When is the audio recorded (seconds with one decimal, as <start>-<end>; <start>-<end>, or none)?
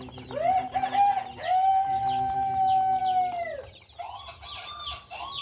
0.0-5.4